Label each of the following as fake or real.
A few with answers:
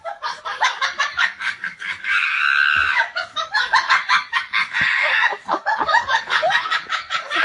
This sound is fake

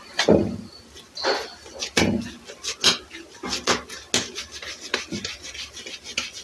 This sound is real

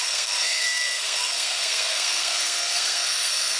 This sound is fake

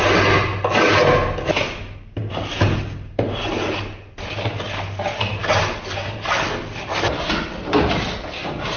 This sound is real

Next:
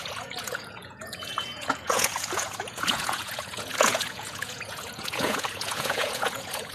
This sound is fake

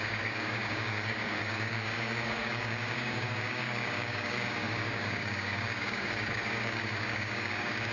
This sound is fake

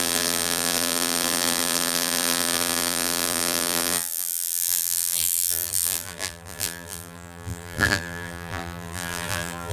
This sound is fake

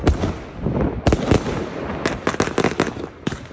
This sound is real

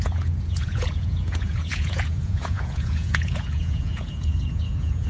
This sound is fake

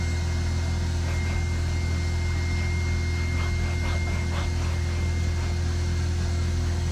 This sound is real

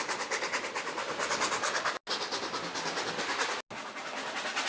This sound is real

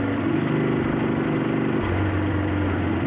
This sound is real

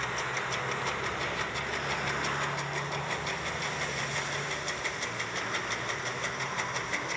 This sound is real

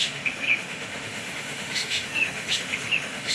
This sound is fake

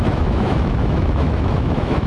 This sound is fake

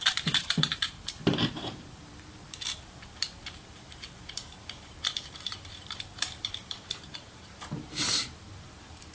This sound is fake